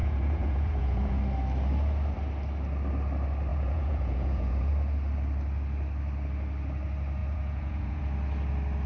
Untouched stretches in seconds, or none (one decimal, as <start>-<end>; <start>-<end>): 1.2-3.5; 4.7-7.2; 8.0-8.9